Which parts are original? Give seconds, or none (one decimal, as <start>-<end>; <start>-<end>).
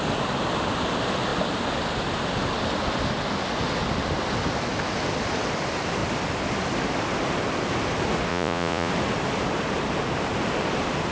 0.0-8.3; 8.9-11.1